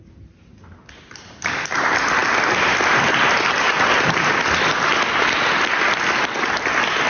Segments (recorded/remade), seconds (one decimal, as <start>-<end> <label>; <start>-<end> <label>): 0.0-7.1 recorded